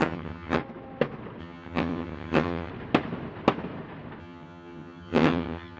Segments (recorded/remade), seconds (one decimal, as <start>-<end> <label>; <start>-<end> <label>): 0.0-0.6 remade; 0.6-1.4 recorded; 1.4-2.7 remade; 2.7-4.2 recorded; 4.2-5.8 remade